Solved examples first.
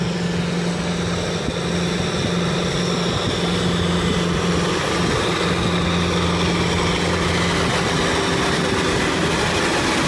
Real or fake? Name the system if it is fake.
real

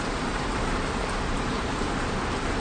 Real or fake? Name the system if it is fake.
fake, vocoder, BigVGAN v2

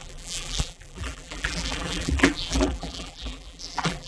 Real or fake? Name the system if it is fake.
fake, vocoder, BigVGAN v2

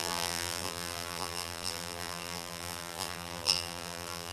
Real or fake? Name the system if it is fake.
fake, vocoder, BigVGAN v2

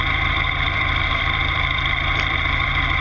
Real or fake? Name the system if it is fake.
fake, vocoder, BigVGAN v2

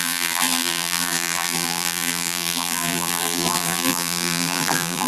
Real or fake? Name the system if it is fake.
fake, vocoder, BigVGAN v2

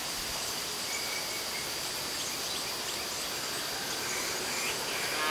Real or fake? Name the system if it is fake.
real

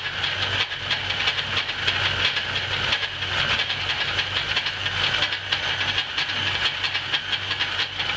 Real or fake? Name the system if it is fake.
real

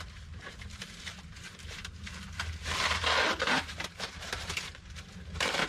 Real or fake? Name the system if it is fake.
fake, vocoder, BigVGAN v2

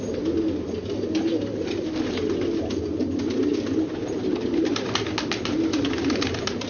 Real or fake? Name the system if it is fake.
real